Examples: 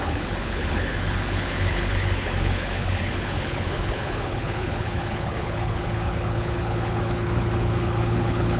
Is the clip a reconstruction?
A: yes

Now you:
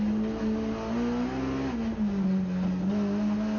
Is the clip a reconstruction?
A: no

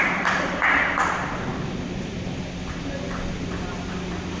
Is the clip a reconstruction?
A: no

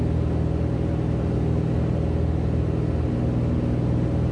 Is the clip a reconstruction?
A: no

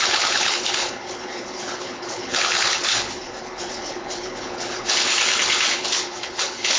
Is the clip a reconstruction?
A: yes